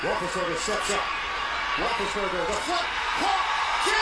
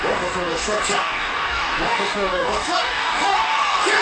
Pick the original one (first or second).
first